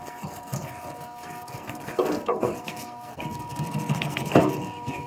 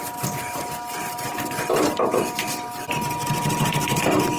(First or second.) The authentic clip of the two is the second